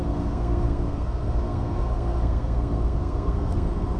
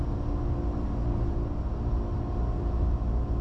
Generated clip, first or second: first